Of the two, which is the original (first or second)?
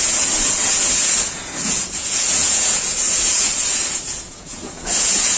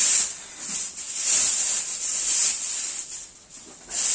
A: second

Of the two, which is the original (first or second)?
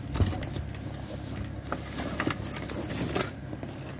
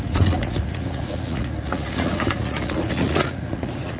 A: first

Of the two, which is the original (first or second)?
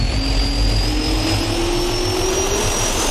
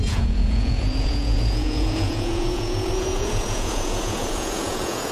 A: first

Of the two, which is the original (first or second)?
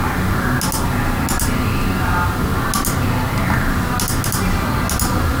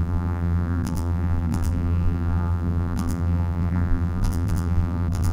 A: first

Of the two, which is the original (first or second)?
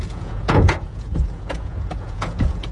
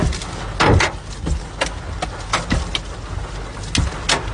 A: second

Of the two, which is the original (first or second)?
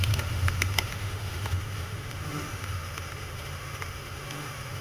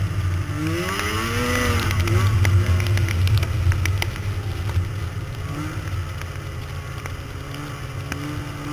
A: second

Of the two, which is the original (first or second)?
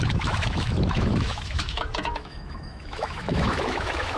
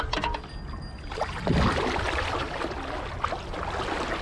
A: second